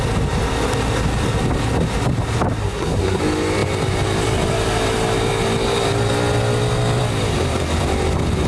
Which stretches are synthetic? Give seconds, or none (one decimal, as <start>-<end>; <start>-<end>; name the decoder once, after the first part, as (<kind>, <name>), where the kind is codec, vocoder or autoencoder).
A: 2.6-3.2 (codec, SNAC)